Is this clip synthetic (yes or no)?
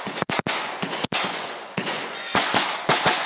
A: yes